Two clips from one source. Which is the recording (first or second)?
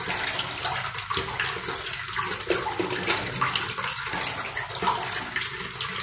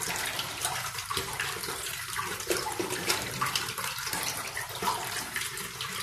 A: first